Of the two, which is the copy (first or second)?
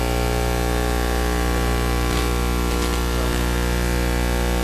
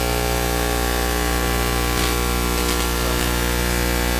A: first